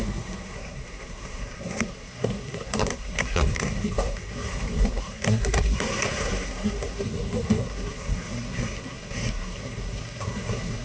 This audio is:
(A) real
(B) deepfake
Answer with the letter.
B